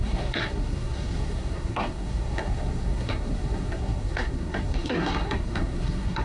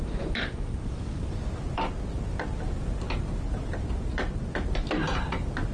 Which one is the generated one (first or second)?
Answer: first